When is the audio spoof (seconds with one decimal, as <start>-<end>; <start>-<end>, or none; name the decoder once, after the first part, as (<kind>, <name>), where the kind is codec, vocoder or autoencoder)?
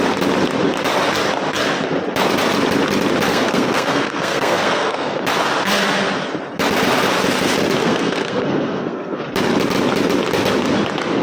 3.3-5.2 (codec, SNAC); 7.8-9.2